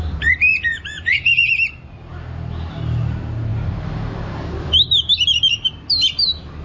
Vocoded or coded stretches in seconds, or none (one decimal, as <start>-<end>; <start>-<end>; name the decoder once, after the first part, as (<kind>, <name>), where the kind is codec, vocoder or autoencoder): 0.5-1.5 (vocoder, Vocos)